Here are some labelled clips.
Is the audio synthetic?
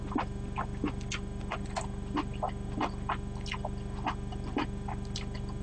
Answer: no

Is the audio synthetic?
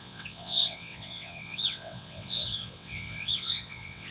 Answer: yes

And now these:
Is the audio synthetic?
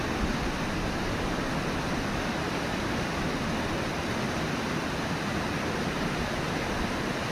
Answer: no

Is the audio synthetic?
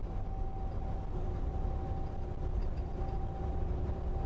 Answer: no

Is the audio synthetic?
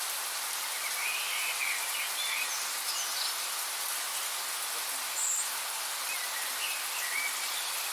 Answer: no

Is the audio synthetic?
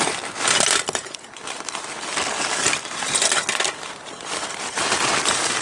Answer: no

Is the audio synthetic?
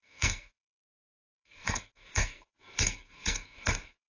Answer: yes